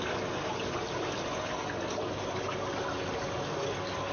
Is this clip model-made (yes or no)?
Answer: no